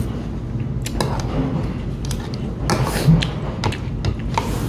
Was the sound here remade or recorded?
recorded